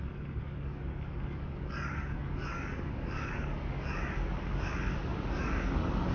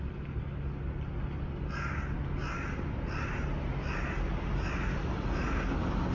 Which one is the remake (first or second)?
first